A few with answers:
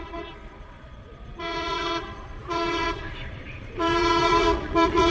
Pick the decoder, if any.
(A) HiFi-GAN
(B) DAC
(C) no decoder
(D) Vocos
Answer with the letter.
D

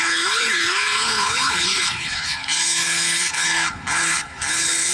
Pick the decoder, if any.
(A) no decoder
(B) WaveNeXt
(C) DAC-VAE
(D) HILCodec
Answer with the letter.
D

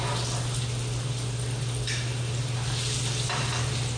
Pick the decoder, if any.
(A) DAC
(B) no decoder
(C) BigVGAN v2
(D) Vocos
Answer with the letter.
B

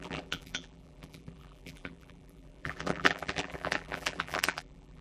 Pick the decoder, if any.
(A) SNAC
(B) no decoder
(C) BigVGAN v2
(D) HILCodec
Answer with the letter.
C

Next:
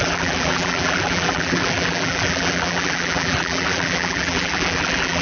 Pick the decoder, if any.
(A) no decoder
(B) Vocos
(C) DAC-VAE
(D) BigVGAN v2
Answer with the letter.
D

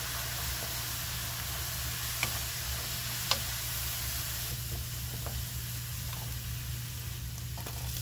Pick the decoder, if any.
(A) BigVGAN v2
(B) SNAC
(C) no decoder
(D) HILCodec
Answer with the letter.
C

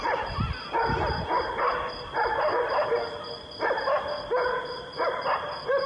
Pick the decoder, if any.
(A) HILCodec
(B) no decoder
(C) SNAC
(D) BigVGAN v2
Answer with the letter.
B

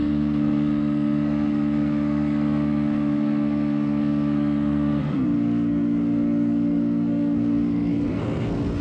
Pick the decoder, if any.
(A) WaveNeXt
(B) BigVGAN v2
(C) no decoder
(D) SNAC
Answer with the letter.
D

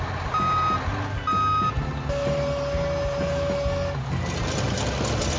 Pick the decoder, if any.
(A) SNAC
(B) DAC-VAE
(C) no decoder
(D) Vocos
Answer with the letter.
C